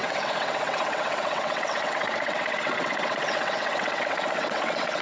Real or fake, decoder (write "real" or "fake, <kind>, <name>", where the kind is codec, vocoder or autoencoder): fake, vocoder, WaveNeXt